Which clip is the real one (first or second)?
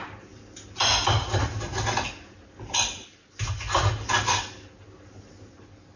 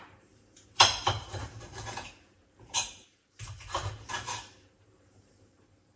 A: first